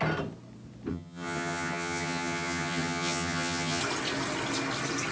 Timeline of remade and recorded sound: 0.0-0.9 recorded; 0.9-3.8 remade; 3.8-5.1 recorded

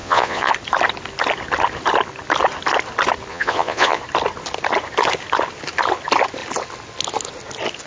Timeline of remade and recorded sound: 0.0-0.5 remade; 0.5-3.3 recorded; 3.3-4.0 remade; 4.0-7.9 recorded

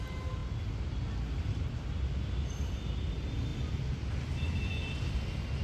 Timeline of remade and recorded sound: 0.0-5.6 recorded

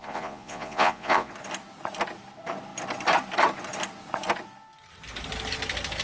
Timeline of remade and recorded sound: 0.0-1.3 remade; 1.3-6.0 recorded

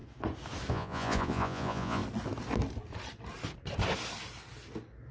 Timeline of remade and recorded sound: 0.0-0.7 recorded; 0.7-2.0 remade; 2.0-5.1 recorded

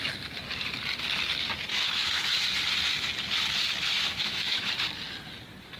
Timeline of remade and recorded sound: 0.0-1.7 recorded; 1.7-2.4 remade; 2.4-4.1 recorded; 4.1-4.7 remade; 4.7-5.8 recorded

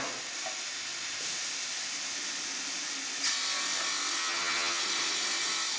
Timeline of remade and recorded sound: 0.0-4.2 recorded; 4.2-4.8 remade; 4.8-5.8 recorded